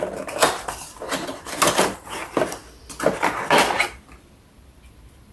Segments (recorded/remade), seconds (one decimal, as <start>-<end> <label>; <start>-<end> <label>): 0.0-5.3 recorded